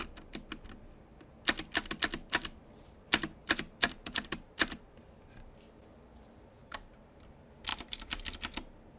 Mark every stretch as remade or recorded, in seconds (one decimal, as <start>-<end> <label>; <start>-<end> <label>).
0.0-3.4 recorded; 3.4-4.8 remade; 4.8-6.6 recorded; 6.6-7.2 remade; 7.2-7.7 recorded; 7.7-8.2 remade; 8.2-9.0 recorded